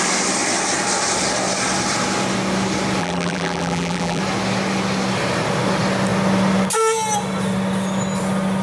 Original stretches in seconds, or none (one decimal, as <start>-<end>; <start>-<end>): 0.0-3.0; 4.2-8.6